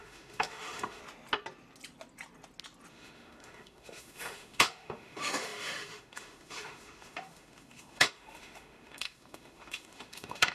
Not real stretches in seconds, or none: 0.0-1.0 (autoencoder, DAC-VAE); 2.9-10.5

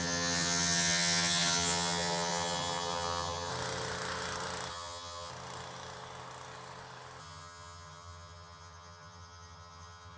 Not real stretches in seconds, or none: 0.0-3.5 (vocoder, HiFi-GAN); 4.7-5.3; 7.2-10.2

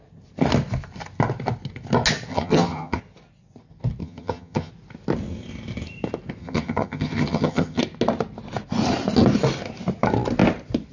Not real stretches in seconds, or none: 2.3-3.0 (vocoder, HiFi-GAN); 4.0-4.7; 6.4-7.8

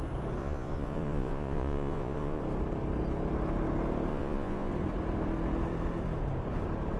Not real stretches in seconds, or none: 0.4-2.4 (vocoder, Vocos); 4.1-4.7

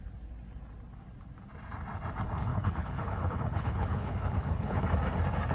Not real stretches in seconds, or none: 2.5-4.8 (codec, HILCodec)

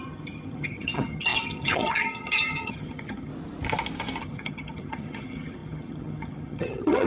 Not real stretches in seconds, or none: 0.0-3.3 (vocoder, HiFi-GAN); 4.2-7.1

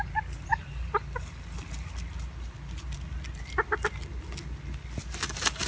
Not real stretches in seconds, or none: none